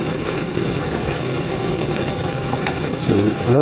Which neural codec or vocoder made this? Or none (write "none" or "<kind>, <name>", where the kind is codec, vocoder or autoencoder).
codec, SNAC